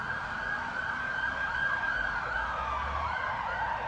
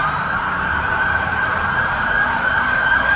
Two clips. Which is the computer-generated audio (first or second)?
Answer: second